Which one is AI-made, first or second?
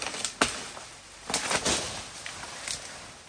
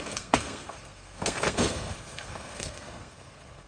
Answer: second